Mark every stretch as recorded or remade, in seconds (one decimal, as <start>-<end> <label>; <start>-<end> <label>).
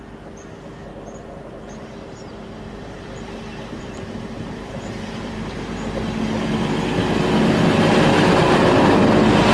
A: 0.0-0.9 recorded; 0.9-5.5 remade; 5.5-8.4 recorded; 8.4-8.9 remade; 8.9-9.5 recorded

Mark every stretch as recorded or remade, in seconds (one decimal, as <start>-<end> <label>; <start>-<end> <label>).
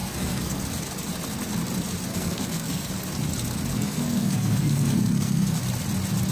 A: 0.0-0.6 remade; 0.6-2.1 recorded; 2.1-2.9 remade; 2.9-3.7 recorded; 3.7-5.6 remade; 5.6-6.3 recorded